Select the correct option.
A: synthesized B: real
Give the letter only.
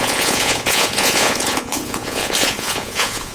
A